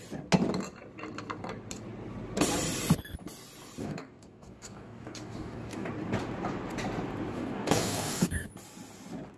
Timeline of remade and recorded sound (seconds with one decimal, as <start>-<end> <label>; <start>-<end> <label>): 0.0-3.8 recorded; 3.8-5.9 remade; 5.9-7.3 recorded; 7.3-8.5 remade; 8.5-9.4 recorded